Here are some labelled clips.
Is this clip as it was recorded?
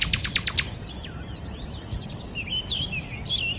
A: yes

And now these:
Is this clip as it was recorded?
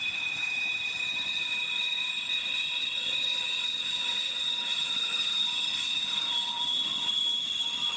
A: no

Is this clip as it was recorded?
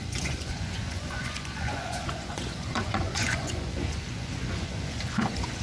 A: no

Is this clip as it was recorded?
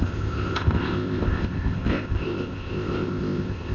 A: no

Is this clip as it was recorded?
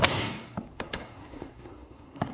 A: no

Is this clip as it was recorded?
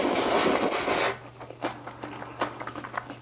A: yes